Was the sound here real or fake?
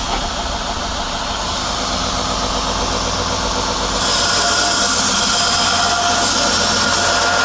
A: real